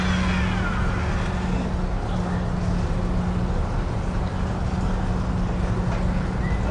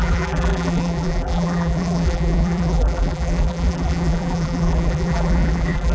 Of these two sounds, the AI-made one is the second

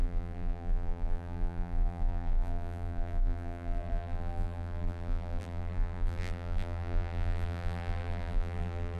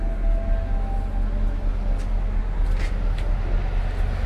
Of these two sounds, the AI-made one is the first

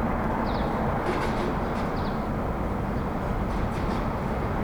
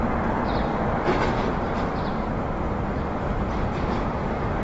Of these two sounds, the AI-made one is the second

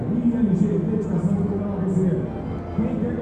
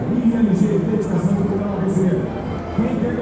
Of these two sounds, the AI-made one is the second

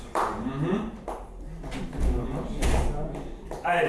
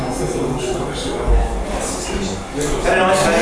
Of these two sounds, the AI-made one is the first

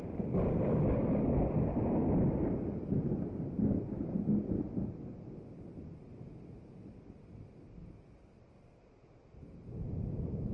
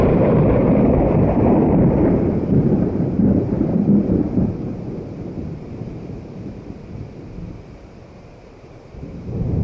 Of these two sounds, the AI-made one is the second